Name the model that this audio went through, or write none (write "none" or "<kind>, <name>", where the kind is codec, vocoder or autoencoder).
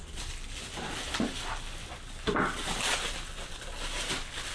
none